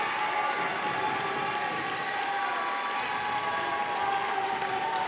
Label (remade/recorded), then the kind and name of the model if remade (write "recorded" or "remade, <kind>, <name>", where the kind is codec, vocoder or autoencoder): recorded